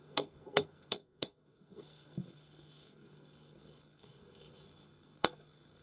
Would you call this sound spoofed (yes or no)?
yes